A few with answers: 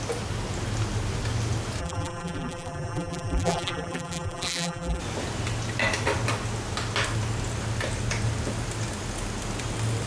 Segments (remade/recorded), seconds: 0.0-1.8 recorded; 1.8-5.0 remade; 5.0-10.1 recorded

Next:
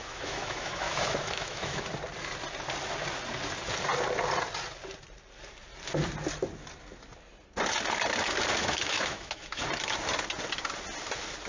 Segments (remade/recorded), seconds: 0.0-1.8 remade; 1.8-8.6 recorded; 8.6-9.6 remade; 9.6-11.5 recorded

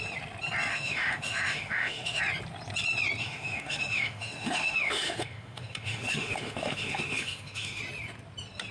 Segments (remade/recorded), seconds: 0.0-0.7 recorded; 0.7-2.2 remade; 2.2-3.2 recorded; 3.2-7.8 remade; 7.8-8.7 recorded

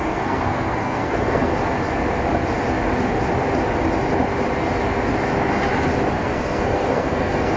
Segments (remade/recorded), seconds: 0.0-1.5 remade; 1.5-6.1 recorded; 6.1-7.6 remade

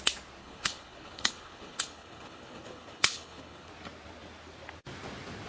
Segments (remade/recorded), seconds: 0.0-0.4 recorded; 0.4-3.7 remade; 3.7-5.5 recorded